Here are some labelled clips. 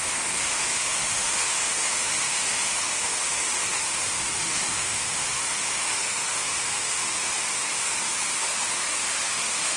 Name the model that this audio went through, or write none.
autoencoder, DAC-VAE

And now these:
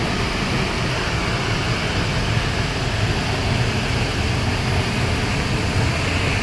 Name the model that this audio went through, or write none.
none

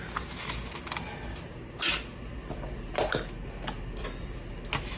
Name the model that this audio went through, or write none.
none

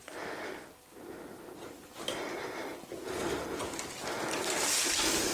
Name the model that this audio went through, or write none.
none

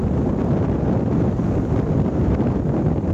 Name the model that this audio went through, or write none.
none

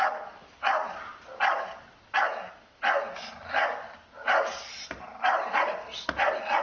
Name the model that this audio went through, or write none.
none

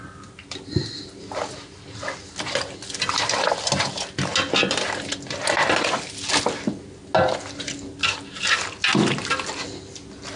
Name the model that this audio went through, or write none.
none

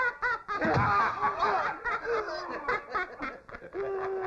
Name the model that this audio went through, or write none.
none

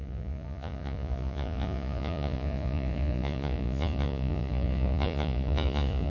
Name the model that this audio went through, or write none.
vocoder, Vocos